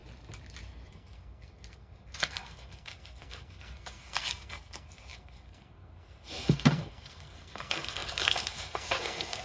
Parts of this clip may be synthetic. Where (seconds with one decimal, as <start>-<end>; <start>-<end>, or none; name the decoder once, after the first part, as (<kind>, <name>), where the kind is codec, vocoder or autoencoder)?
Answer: 0.9-9.4 (codec, SNAC)

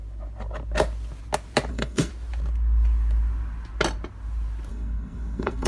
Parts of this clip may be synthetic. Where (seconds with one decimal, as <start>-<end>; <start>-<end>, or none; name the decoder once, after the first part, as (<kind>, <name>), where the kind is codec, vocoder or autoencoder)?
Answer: 1.7-2.1 (codec, SNAC); 4.7-5.7

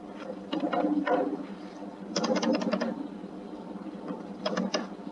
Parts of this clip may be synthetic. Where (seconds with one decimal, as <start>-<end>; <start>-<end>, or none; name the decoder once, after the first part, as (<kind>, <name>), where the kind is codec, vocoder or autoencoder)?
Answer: none

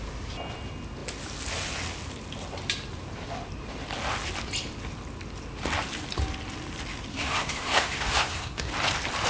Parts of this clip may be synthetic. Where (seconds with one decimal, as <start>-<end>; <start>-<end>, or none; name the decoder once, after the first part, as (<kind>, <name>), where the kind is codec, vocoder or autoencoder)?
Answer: 7.1-8.7 (codec, SNAC)

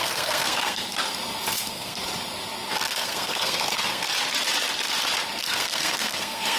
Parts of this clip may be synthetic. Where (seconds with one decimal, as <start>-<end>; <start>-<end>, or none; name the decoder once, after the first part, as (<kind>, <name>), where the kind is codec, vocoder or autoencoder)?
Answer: 0.0-1.0 (codec, SNAC); 1.6-2.0; 2.7-4.1; 5.4-6.6

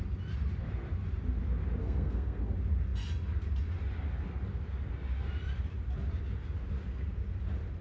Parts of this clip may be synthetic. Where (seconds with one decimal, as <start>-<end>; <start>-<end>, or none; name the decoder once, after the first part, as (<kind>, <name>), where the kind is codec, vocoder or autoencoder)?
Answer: 1.8-2.4 (codec, SNAC)

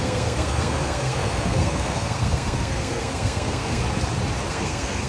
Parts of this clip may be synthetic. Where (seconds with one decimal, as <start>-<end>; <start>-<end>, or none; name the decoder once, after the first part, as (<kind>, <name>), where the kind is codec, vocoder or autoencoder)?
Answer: 0.0-3.8 (codec, SNAC); 4.5-5.1

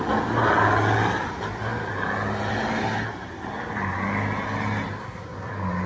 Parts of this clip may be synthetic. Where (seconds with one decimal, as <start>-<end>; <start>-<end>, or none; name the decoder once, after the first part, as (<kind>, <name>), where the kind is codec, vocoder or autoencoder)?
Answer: 5.0-5.5 (codec, SNAC)